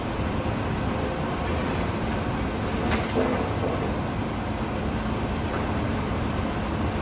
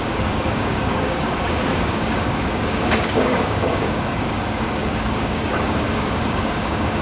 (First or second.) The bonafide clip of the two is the first